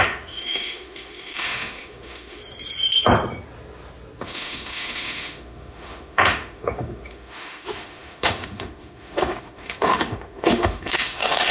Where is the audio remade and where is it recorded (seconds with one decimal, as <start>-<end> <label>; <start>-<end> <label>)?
0.0-2.4 remade; 2.4-4.2 recorded; 4.2-11.5 remade